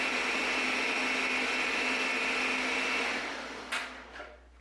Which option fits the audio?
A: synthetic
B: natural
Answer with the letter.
B